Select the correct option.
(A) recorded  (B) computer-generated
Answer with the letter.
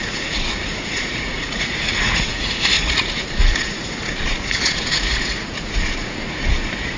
B